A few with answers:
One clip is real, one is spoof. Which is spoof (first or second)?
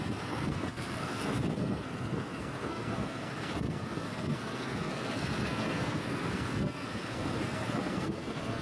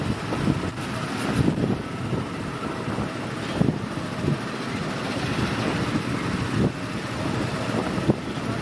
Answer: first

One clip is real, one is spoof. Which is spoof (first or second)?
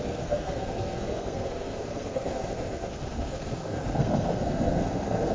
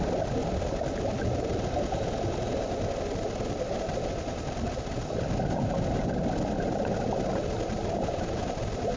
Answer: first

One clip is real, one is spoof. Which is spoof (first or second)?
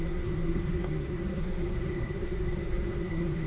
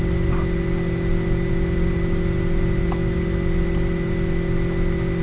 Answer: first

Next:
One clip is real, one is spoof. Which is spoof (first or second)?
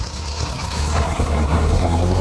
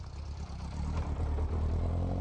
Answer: first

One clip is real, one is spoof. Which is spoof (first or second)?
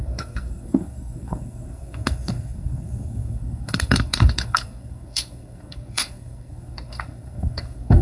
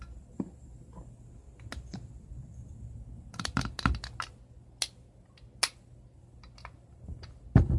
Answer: first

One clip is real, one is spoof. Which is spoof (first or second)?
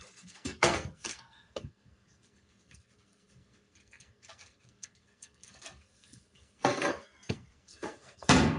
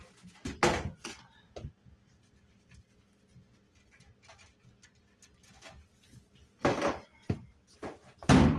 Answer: first